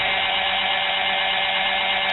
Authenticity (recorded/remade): recorded